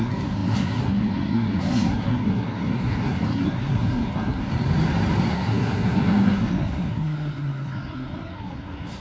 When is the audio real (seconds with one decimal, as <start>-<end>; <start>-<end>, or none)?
4.5-5.3